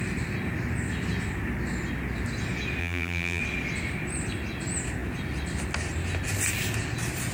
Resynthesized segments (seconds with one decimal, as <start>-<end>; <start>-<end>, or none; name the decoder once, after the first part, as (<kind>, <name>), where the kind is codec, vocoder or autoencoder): 2.8-3.4 (vocoder, BigVGAN v2)